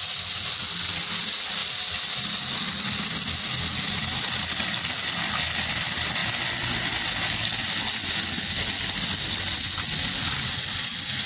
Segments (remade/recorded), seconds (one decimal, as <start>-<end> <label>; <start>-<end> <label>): 0.0-11.3 recorded